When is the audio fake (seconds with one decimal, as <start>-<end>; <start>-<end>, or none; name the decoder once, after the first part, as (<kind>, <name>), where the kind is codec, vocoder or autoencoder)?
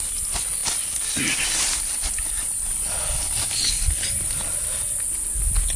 none